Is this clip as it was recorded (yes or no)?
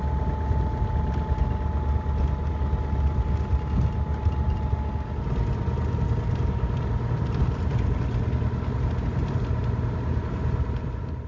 yes